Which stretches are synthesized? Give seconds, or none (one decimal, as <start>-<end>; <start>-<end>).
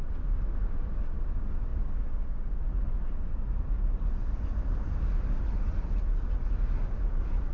none